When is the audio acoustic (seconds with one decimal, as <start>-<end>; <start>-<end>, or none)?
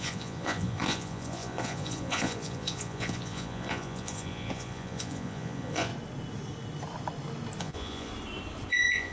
5.9-7.6; 8.1-8.7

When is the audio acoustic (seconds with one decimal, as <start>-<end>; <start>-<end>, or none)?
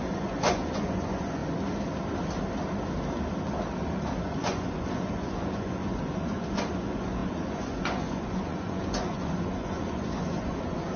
1.4-4.2